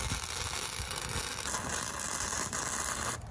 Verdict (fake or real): real